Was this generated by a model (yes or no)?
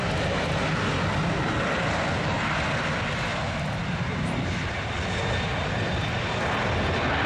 no